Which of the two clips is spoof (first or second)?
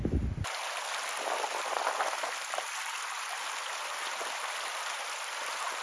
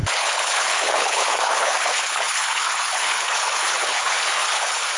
second